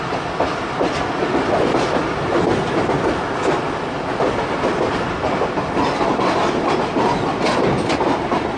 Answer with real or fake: real